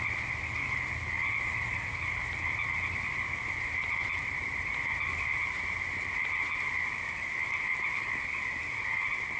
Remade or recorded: recorded